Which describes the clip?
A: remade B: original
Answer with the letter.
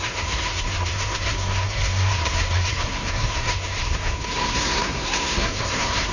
A